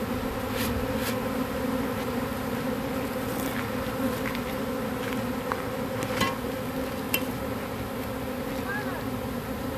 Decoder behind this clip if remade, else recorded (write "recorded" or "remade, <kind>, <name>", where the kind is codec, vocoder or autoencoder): recorded